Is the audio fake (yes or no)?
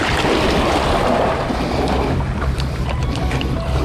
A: yes